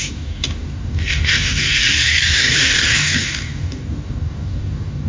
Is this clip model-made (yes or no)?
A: yes